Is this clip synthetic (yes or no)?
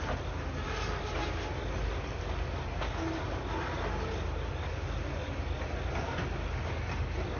no